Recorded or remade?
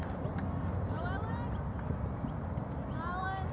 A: recorded